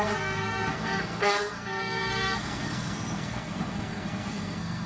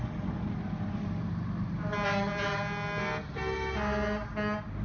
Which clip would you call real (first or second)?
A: second